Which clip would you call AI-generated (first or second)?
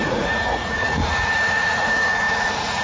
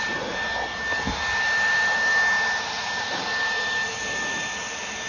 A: first